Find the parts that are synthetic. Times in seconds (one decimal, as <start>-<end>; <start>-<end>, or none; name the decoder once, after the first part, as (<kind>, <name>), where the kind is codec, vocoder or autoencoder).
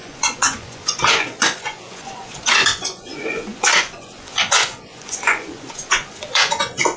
0.0-7.0 (vocoder, Vocos)